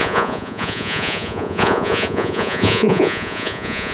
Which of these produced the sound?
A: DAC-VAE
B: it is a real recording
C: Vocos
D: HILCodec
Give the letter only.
C